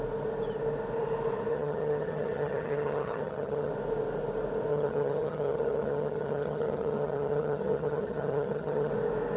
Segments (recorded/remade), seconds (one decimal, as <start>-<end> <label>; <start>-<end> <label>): 0.0-1.5 recorded; 1.5-3.7 remade; 3.7-4.7 recorded; 4.7-8.9 remade; 8.9-9.4 recorded